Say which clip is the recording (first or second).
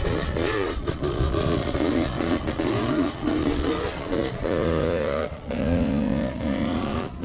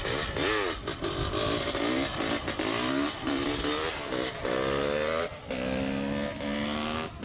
second